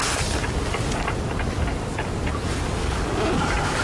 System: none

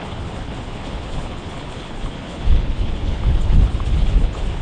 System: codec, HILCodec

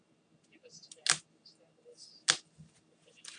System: none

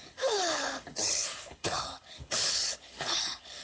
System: codec, HILCodec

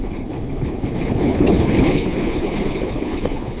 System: codec, HILCodec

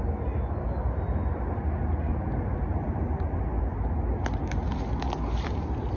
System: none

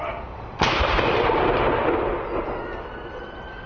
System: none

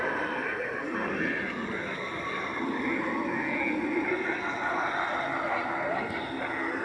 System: none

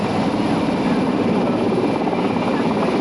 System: none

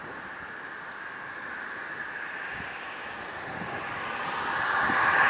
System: none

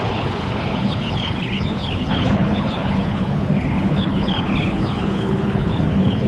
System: codec, HILCodec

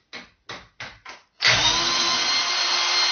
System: none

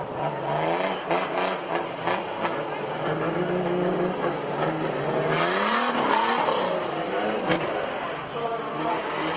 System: none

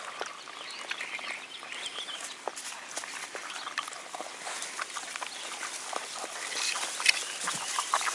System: none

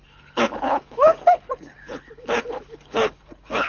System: codec, HILCodec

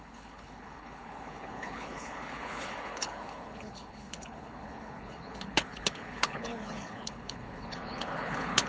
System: codec, HILCodec